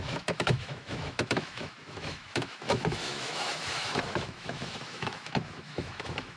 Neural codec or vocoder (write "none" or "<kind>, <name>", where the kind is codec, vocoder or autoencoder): autoencoder, DAC-VAE